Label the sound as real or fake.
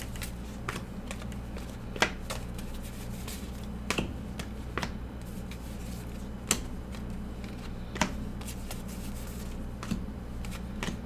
real